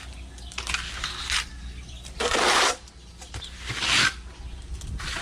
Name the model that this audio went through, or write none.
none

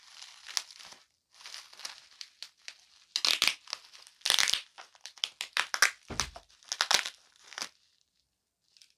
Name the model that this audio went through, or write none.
none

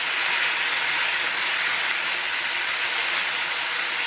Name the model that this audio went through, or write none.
none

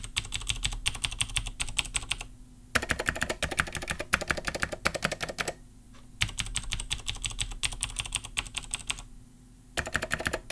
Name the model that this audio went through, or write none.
none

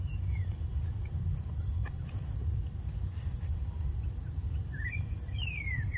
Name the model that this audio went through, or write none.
vocoder, BigVGAN v2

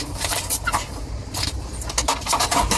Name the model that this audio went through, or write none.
vocoder, BigVGAN v2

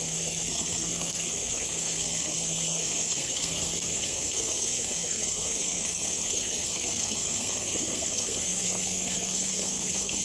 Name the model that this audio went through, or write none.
codec, SNAC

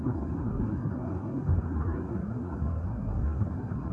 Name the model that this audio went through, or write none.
codec, SNAC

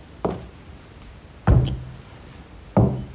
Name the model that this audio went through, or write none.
none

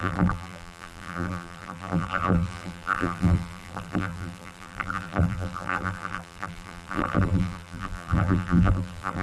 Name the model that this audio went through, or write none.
vocoder, BigVGAN v2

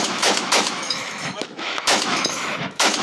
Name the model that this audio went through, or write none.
autoencoder, DAC-VAE